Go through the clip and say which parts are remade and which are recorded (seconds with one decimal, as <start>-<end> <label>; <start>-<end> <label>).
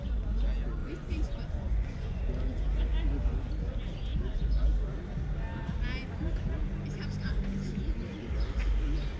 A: 0.0-0.8 recorded; 0.8-2.2 remade; 2.2-4.1 recorded; 4.1-4.7 remade; 4.7-9.2 recorded